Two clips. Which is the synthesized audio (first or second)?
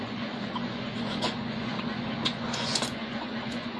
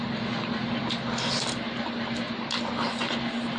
first